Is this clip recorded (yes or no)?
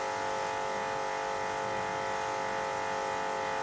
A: yes